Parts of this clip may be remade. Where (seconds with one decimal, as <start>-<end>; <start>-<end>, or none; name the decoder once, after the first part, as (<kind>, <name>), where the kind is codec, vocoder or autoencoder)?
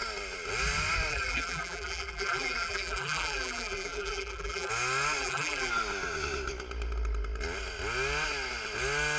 1.1-4.7 (vocoder, BigVGAN v2); 5.2-5.7